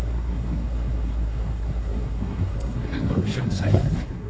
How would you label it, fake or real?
fake